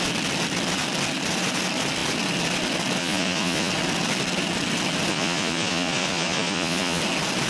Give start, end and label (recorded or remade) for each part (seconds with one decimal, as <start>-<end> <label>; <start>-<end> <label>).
0.0-3.0 recorded; 3.0-3.7 remade; 3.7-5.1 recorded; 5.1-7.0 remade; 7.0-7.5 recorded